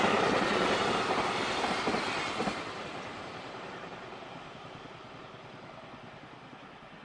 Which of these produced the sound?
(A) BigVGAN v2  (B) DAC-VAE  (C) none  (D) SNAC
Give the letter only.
C